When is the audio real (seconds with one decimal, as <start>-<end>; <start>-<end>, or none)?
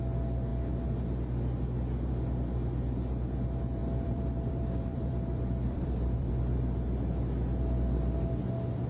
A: 0.0-3.8; 6.3-8.9